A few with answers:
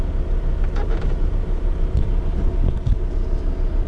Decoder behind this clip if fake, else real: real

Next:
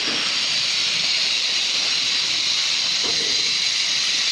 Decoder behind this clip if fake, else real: real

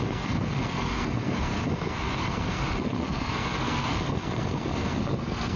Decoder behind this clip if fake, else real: fake, codec, SNAC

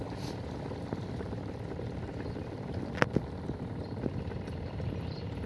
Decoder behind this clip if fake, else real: real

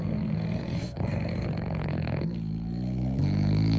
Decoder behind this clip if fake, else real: fake, codec, SNAC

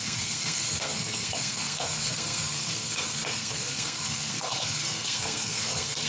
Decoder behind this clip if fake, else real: fake, codec, SNAC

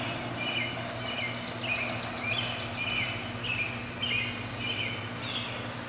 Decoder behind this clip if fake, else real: real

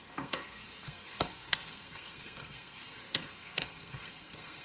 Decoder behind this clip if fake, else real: fake, codec, SNAC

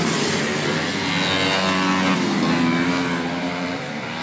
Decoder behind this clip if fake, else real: real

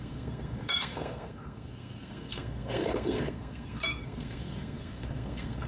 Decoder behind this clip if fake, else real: fake, codec, SNAC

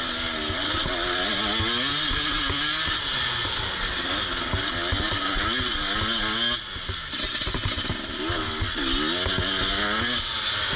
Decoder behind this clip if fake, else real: real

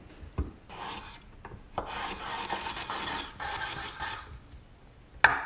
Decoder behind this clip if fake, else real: real